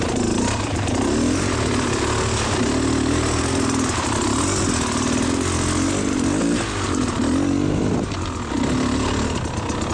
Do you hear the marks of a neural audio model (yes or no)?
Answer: no